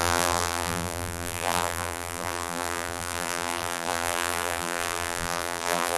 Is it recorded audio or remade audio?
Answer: remade